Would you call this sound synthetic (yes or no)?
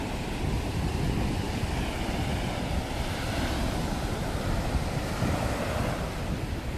no